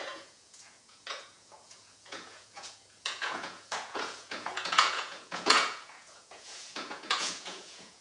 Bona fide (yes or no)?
no